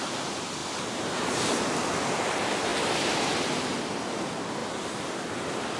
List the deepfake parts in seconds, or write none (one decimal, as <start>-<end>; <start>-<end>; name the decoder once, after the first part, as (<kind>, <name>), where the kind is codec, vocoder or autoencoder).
none